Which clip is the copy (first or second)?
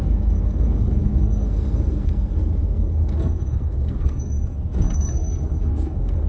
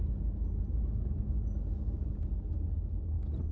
first